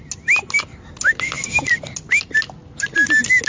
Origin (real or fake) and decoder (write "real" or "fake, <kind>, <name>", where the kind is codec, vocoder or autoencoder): real